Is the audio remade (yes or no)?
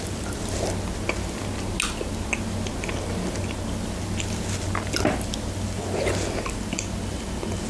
no